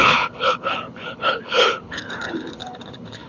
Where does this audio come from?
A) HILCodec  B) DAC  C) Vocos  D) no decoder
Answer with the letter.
A